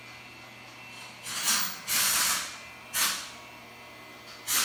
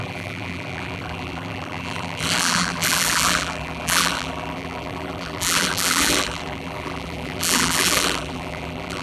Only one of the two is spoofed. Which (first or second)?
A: second